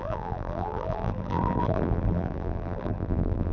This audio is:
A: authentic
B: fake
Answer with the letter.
B